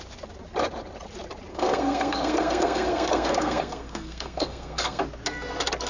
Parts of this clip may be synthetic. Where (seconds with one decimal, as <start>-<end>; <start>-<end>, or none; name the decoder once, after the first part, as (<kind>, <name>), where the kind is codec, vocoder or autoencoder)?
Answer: 1.5-5.0 (codec, SNAC)